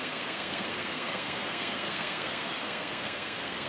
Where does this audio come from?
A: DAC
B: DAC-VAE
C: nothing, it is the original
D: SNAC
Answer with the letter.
D